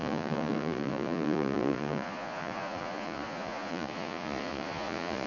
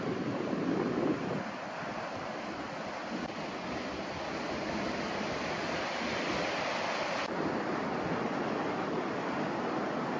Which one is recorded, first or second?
second